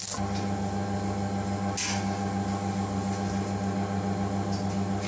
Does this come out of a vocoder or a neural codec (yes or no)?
no